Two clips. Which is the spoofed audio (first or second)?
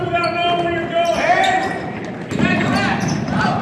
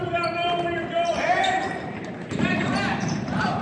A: second